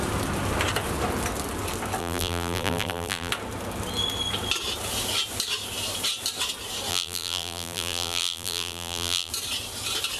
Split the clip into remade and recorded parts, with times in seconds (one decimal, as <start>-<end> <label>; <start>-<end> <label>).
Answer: 0.0-2.0 recorded; 2.0-3.3 remade; 3.3-6.9 recorded; 6.9-9.3 remade; 9.3-10.2 recorded